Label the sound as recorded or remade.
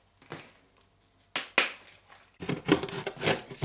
recorded